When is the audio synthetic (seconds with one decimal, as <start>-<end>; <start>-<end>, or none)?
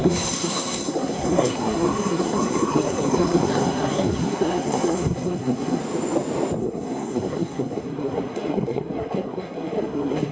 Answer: 0.0-5.8; 6.6-10.3